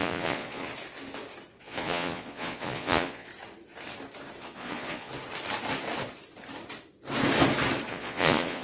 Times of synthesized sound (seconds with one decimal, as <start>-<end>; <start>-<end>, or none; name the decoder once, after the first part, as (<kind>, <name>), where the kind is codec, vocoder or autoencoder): 0.0-0.7 (vocoder, Vocos); 1.6-3.3; 4.4-5.1; 7.9-8.6